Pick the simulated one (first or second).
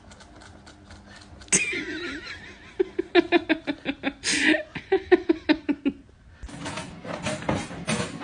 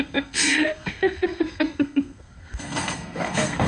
second